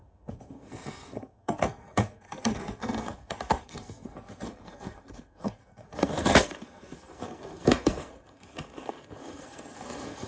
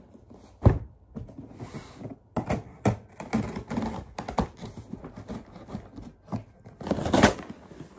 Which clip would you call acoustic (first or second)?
second